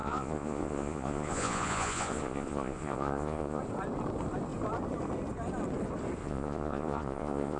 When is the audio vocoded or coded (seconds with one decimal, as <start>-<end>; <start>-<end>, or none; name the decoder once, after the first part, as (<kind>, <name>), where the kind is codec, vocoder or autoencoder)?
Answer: 0.0-3.6 (vocoder, Vocos); 6.2-7.6